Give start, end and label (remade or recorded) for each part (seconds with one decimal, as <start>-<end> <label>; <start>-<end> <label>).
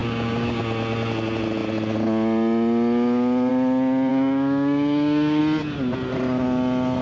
0.0-0.6 remade; 0.6-4.1 recorded; 4.1-5.4 remade; 5.4-7.0 recorded